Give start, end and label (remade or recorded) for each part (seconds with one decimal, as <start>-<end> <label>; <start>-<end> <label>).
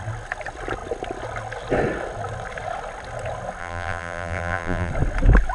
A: 0.0-3.6 recorded; 3.6-4.9 remade; 4.9-5.5 recorded